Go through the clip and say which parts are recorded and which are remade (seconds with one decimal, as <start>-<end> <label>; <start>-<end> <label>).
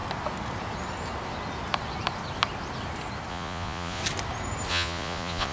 0.0-3.3 recorded; 3.3-4.0 remade; 4.0-4.7 recorded; 4.7-5.5 remade